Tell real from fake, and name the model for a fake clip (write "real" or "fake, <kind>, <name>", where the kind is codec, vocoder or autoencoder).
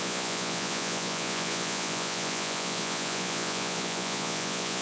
fake, vocoder, Vocos